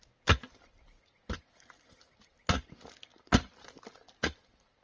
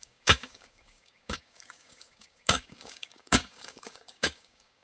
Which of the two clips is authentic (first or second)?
first